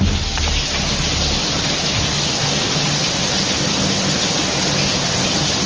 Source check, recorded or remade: recorded